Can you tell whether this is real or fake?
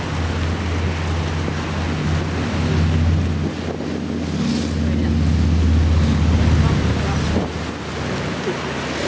real